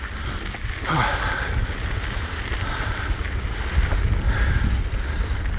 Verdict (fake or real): real